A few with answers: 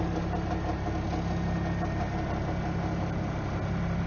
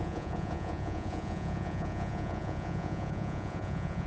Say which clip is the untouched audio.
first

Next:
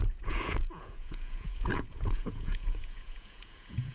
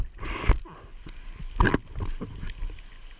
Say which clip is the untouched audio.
second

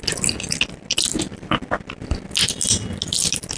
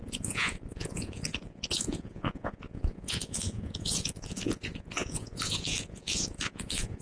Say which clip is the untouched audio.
first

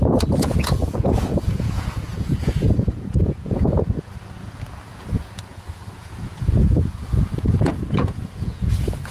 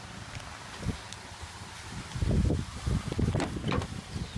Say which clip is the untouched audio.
second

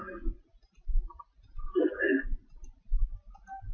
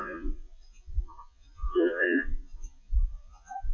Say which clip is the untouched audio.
first